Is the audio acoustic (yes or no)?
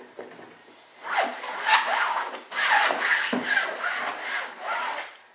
yes